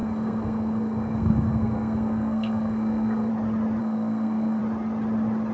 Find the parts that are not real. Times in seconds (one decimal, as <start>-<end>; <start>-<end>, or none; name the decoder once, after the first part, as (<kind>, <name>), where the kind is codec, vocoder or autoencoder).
0.0-3.3 (codec, SNAC); 3.8-4.6